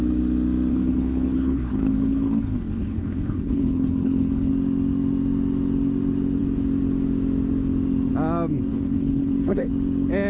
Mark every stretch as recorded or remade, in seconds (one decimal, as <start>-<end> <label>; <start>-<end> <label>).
0.0-0.7 recorded; 0.7-4.5 remade; 4.5-8.7 recorded; 8.7-9.7 remade; 9.7-10.3 recorded